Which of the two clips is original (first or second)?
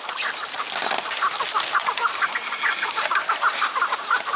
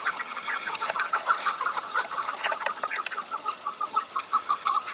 first